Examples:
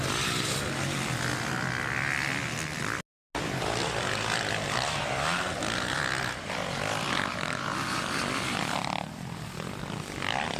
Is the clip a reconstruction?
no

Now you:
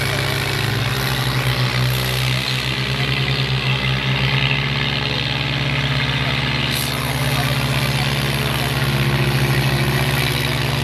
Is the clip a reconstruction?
no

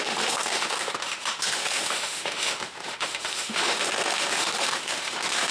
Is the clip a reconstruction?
yes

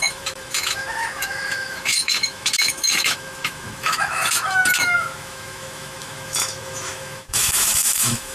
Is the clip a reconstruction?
yes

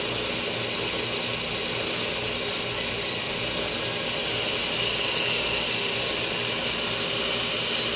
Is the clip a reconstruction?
no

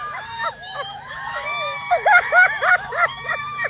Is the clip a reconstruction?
yes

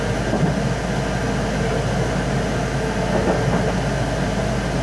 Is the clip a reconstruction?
no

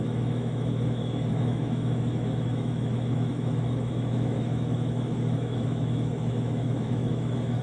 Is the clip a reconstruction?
yes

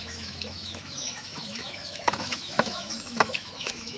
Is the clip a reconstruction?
yes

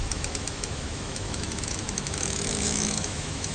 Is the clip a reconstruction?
yes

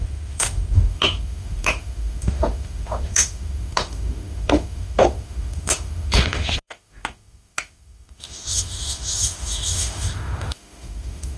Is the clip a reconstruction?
yes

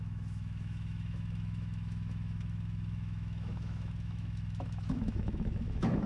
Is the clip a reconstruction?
yes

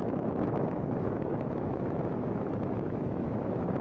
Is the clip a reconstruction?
yes